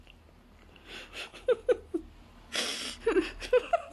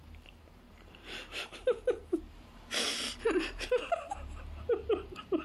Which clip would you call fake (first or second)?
second